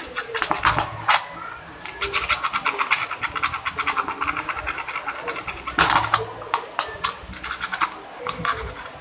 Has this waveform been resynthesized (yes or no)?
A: no